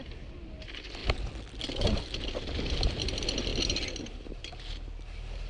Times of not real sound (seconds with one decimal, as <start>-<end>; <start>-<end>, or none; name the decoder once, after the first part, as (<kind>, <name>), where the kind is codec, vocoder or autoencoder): none